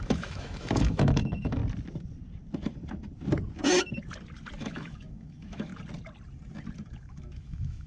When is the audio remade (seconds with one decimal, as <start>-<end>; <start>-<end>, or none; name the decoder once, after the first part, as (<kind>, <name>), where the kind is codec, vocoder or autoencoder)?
0.0-1.6 (autoencoder, DAC-VAE); 4.6-5.7; 7.0-7.9